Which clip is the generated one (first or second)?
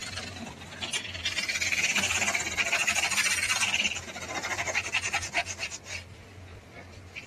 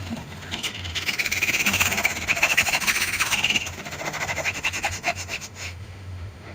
second